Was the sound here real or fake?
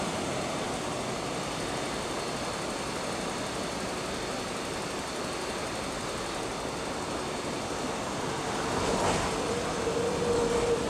real